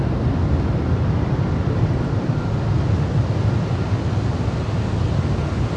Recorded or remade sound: recorded